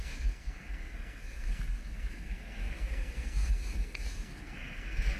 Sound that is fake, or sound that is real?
fake